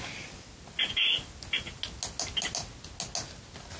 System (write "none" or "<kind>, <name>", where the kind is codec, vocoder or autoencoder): none